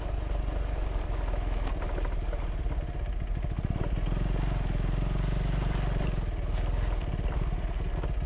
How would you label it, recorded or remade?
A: recorded